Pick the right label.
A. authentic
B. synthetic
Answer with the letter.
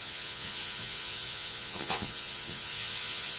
B